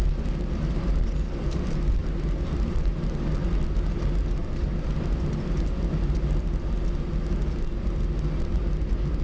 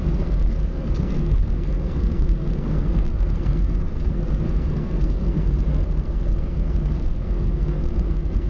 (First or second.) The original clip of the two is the first